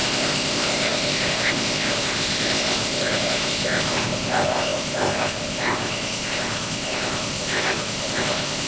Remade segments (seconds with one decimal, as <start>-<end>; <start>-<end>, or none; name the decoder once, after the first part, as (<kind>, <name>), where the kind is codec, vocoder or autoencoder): 0.0-8.7 (codec, ZipCodec)